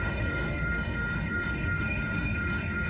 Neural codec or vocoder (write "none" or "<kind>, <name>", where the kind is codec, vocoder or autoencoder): autoencoder, DAC-VAE